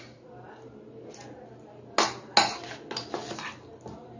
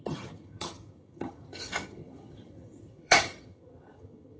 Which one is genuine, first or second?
first